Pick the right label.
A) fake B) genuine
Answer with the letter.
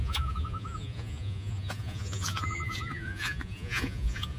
A